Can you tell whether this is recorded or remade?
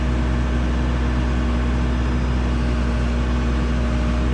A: recorded